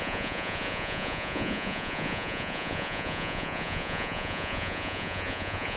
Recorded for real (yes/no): no